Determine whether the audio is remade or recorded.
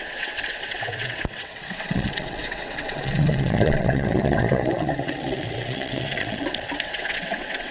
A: remade